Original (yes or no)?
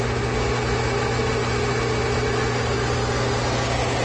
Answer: yes